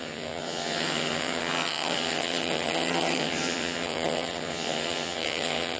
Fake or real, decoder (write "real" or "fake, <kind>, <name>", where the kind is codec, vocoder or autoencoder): fake, vocoder, HiFi-GAN